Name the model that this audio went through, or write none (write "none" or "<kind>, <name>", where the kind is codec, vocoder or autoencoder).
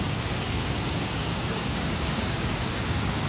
codec, DAC